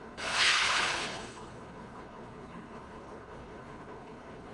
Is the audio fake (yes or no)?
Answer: yes